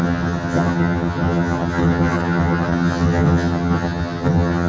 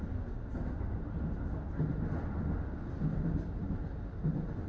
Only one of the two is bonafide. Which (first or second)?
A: second